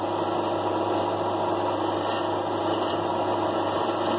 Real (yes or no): yes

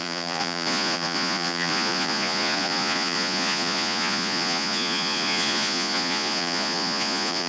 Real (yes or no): no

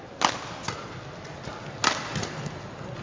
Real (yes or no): yes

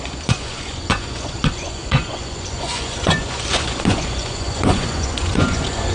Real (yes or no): no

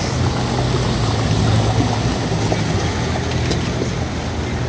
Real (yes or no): yes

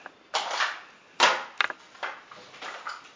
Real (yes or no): yes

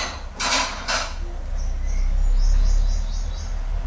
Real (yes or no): yes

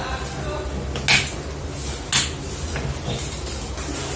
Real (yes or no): yes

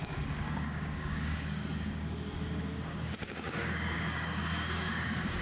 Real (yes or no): no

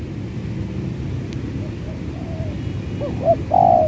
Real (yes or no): yes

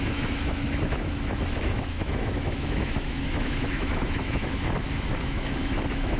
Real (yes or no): no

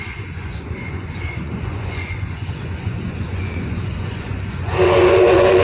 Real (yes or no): no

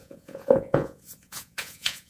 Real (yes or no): no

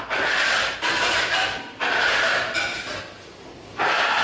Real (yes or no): yes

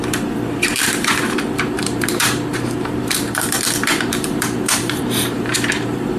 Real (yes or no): no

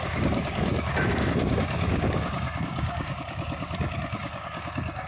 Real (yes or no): no